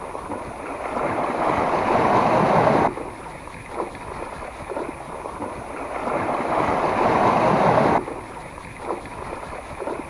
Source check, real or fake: real